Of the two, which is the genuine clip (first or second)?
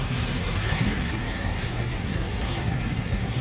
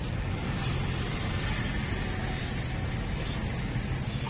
second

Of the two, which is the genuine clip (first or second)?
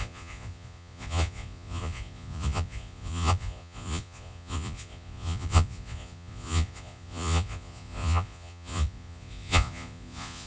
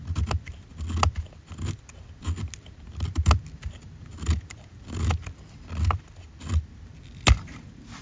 second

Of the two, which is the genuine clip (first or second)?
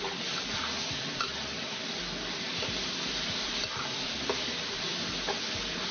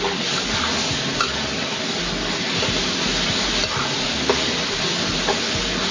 second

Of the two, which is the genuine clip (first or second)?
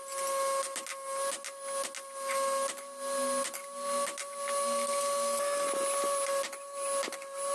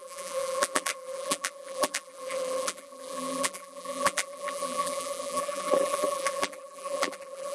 first